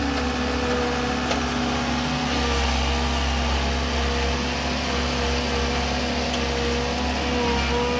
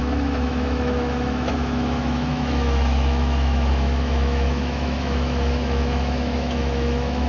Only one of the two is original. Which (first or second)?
first